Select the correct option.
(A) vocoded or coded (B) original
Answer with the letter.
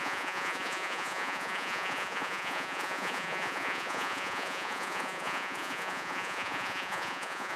A